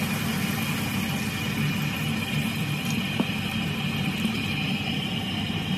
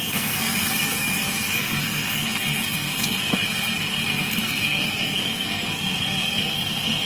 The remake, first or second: second